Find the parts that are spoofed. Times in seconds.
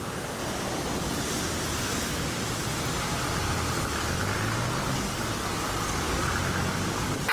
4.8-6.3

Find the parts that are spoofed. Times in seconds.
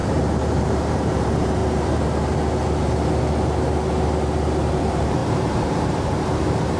0.0-1.6; 4.8-6.8